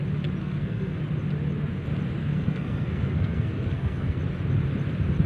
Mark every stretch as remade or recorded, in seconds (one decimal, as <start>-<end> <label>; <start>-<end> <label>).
0.0-0.4 recorded; 0.4-1.0 remade; 1.0-2.2 recorded; 2.2-4.2 remade; 4.2-5.3 recorded